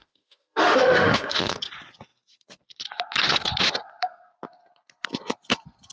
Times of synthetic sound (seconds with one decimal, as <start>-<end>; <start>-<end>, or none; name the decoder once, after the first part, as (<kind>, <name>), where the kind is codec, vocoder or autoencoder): 0.0-1.6 (autoencoder, DAC-VAE)